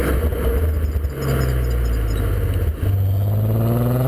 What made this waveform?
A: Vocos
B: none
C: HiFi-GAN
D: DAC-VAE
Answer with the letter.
B